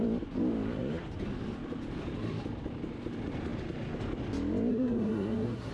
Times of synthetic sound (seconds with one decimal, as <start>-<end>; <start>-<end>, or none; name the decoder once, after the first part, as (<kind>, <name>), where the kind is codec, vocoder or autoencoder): 4.7-5.7 (codec, SNAC)